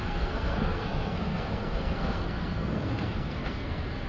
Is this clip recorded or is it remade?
remade